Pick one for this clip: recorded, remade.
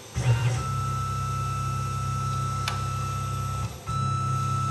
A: recorded